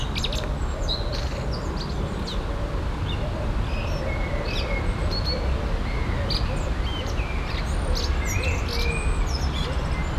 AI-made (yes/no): no